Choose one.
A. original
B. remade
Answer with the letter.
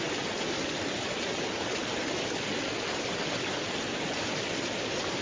A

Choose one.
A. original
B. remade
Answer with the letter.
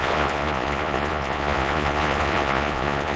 B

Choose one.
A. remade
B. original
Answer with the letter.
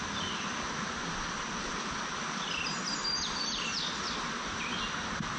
B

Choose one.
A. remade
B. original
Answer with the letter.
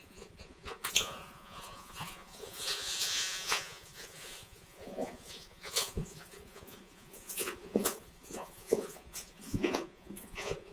A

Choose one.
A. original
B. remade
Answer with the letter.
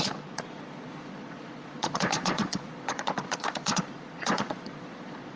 B